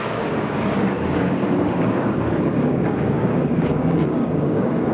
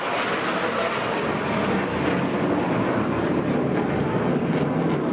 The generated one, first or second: first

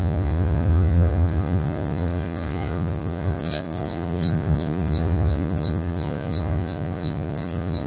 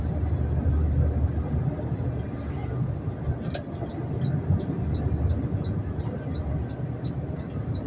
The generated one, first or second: first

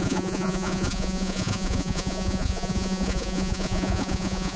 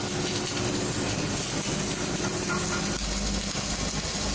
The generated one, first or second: first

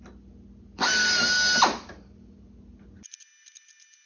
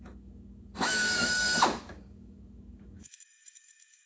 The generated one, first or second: second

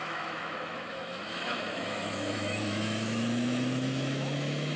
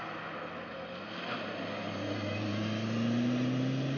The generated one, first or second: first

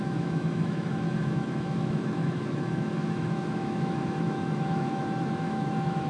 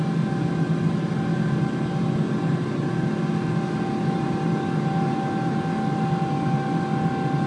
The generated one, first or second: first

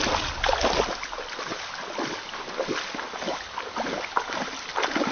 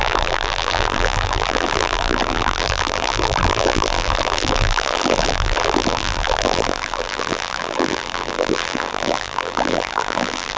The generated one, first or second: second